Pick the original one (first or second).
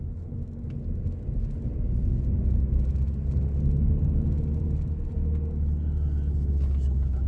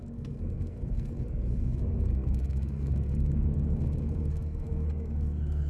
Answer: first